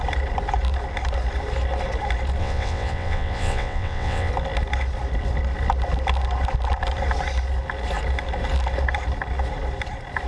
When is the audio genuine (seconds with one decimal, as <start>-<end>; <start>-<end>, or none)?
0.0-2.4; 4.3-10.3